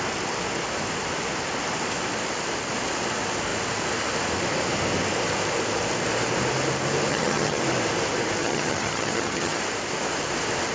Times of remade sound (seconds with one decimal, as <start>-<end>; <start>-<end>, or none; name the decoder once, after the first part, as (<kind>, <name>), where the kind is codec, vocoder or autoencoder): 7.1-7.6 (vocoder, HiFi-GAN); 8.4-9.6